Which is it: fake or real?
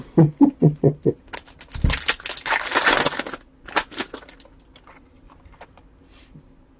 real